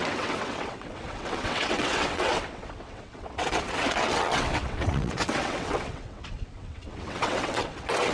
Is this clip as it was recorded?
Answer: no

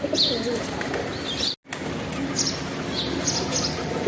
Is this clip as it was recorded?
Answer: yes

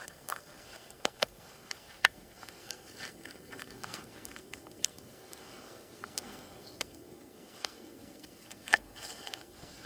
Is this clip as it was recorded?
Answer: no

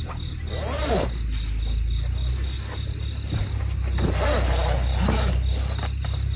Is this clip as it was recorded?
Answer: yes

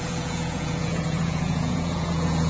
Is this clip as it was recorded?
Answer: no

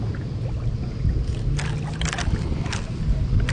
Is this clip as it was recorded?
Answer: yes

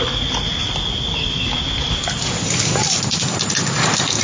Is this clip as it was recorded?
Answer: yes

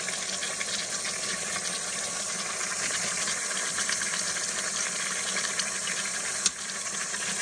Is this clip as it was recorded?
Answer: yes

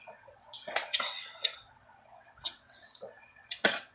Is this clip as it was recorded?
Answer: no